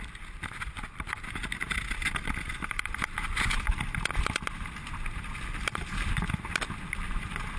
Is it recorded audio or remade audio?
recorded